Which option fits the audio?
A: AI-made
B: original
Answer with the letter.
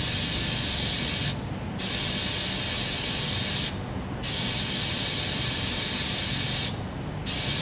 B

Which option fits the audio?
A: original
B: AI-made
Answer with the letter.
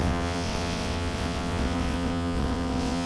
B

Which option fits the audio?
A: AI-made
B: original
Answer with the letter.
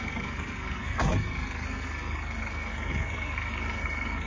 A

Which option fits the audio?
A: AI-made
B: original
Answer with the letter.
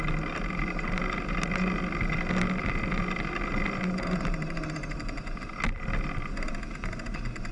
B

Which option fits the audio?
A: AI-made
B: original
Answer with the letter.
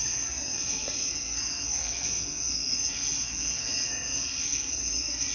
A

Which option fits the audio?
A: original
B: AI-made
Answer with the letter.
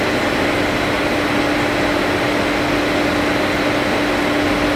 A